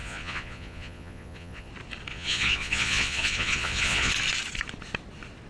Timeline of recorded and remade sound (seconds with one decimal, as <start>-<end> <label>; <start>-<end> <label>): 0.0-1.7 remade; 1.7-2.1 recorded; 2.1-4.1 remade; 4.1-5.5 recorded